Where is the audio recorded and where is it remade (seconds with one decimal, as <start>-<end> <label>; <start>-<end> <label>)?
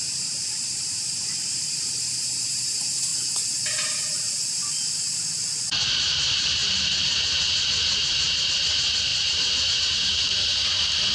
0.0-3.1 remade; 3.1-5.8 recorded; 5.8-11.1 remade